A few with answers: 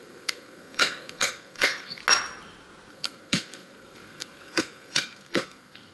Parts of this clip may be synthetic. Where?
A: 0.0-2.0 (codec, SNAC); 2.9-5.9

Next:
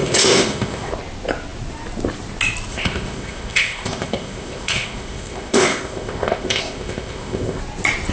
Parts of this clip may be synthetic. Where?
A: 0.0-0.9 (codec, ZipCodec); 2.7-7.6

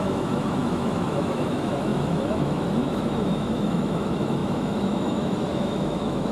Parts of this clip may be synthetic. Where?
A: 0.0-6.3 (autoencoder, DAC-VAE)

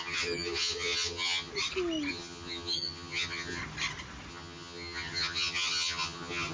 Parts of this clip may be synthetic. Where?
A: 0.0-1.5 (vocoder, HiFi-GAN); 2.1-3.6; 4.3-6.5

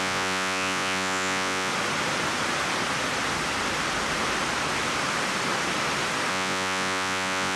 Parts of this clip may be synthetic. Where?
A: 0.0-1.7 (vocoder, Vocos); 6.3-7.6